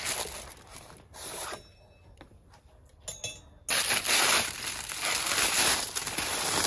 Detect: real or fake real